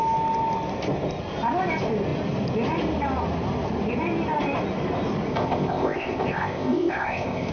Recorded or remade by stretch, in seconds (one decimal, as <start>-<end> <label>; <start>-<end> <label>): 0.0-5.3 recorded; 5.3-7.5 remade